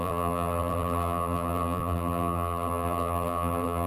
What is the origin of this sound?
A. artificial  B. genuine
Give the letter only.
A